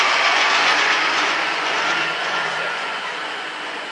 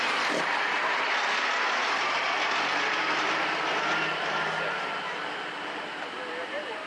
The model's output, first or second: first